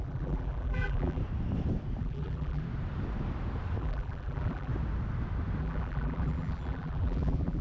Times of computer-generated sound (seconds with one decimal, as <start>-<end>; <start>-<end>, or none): 0.0-1.2; 2.0-2.6; 3.8-4.7; 5.6-7.6